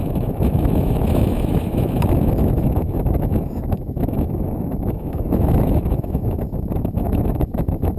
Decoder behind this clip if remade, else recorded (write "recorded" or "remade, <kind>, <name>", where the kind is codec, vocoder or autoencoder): remade, autoencoder, DAC-VAE